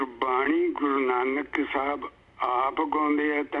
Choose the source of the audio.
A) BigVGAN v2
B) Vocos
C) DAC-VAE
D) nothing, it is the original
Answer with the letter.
D